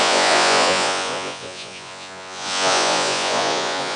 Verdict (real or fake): fake